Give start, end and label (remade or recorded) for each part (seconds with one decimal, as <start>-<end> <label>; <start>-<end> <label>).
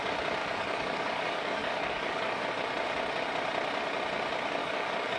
0.0-0.4 recorded; 0.4-2.5 remade; 2.5-4.6 recorded; 4.6-5.2 remade